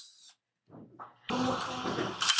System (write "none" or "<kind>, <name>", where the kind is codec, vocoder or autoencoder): none